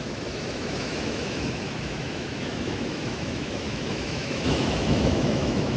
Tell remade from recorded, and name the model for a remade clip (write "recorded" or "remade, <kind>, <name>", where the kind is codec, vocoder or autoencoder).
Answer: remade, autoencoder, DAC-VAE